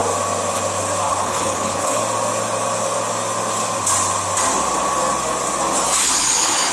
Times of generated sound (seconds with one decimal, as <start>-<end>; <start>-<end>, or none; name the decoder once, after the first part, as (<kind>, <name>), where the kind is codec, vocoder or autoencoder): 1.1-2.0 (codec, HILCodec); 6.0-6.7